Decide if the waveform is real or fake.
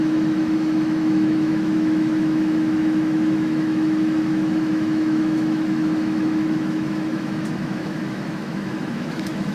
fake